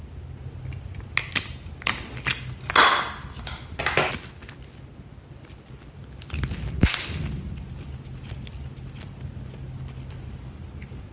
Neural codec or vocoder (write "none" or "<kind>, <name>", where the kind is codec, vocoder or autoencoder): none